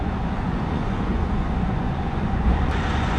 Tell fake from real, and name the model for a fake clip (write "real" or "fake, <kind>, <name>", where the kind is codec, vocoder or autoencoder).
fake, vocoder, Vocos